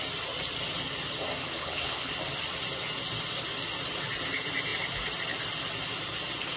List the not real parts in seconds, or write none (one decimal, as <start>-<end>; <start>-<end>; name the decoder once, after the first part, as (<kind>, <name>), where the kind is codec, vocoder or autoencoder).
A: 1.4-2.1 (codec, HILCodec)